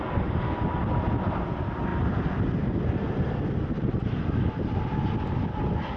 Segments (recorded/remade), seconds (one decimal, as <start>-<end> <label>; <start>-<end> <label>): 0.0-6.0 recorded